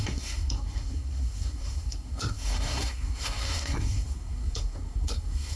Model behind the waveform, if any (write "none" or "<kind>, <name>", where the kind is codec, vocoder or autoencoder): codec, SNAC